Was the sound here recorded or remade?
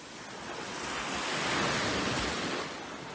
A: recorded